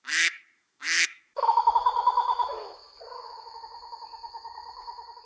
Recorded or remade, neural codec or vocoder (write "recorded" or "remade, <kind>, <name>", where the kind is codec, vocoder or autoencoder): remade, autoencoder, DAC-VAE